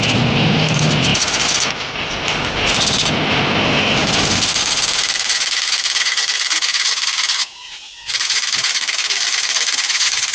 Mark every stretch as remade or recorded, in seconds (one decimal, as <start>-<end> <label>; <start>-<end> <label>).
0.0-10.3 recorded